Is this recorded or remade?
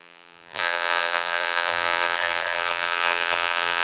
remade